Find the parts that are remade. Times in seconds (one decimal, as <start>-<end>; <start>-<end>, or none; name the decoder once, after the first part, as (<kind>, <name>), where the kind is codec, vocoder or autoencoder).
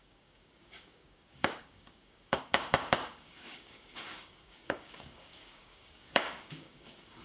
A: 0.0-7.2 (codec, DAC)